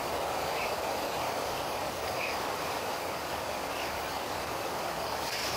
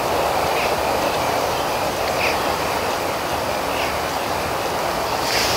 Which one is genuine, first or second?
second